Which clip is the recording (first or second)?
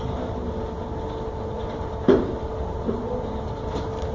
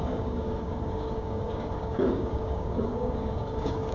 first